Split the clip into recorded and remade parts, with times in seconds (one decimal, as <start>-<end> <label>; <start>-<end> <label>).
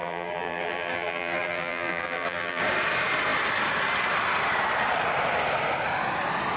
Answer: 0.0-2.6 remade; 2.6-6.6 recorded